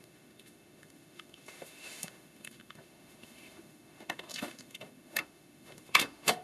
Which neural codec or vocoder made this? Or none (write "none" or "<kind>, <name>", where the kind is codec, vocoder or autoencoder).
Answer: autoencoder, DAC-VAE